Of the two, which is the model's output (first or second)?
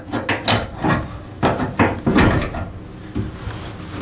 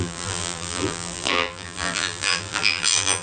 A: second